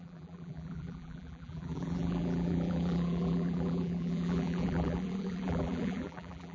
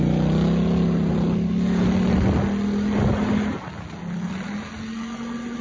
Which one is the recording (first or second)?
second